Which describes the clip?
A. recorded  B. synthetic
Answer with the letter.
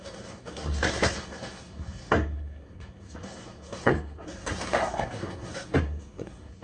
B